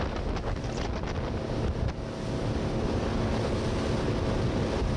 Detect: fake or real real